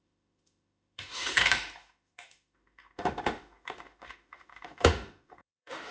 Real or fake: fake